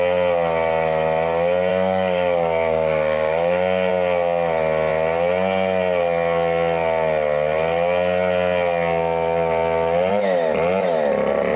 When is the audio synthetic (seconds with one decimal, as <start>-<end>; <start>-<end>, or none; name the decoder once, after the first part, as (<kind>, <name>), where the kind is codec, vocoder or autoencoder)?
1.7-3.9 (codec, DAC)